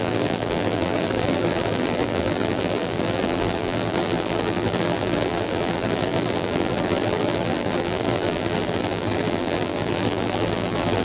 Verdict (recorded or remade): remade